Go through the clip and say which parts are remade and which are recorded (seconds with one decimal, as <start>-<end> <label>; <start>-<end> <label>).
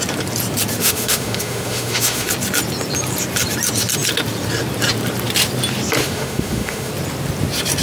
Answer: 0.0-0.8 recorded; 0.8-2.3 remade; 2.3-6.0 recorded; 6.0-6.9 remade; 6.9-7.8 recorded